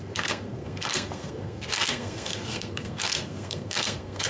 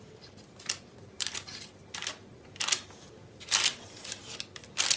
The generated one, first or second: first